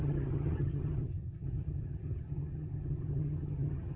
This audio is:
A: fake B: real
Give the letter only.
A